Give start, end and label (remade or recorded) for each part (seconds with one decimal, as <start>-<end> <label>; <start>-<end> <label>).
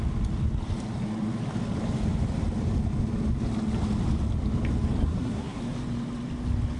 0.0-5.0 recorded; 5.0-5.6 remade; 5.6-6.8 recorded